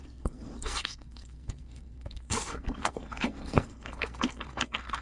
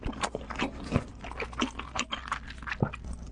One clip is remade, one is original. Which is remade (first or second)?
first